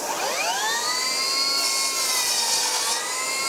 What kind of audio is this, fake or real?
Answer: real